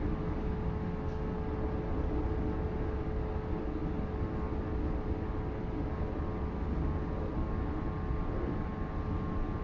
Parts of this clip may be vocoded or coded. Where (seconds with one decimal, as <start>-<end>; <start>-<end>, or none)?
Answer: none